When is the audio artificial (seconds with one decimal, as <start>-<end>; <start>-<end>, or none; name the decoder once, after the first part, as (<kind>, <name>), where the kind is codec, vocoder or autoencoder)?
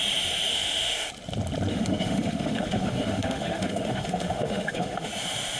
0.5-1.1 (autoencoder, DAC-VAE); 1.7-5.1